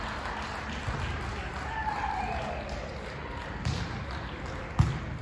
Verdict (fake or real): real